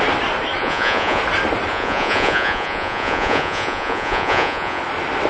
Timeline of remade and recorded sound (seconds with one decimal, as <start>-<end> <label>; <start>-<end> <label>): 0.0-0.6 recorded; 0.6-1.2 remade; 1.2-1.7 recorded; 1.7-4.8 remade; 4.8-5.3 recorded